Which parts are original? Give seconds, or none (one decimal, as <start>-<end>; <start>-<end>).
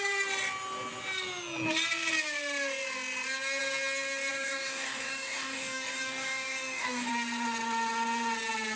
0.0-4.3; 7.1-8.8